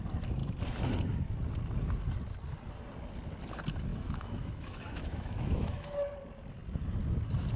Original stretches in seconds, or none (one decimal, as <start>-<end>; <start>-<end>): 0.0-3.9; 6.1-7.6